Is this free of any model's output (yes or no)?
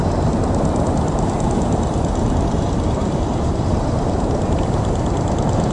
no